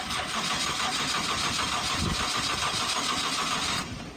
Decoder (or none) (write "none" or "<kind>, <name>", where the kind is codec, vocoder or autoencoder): none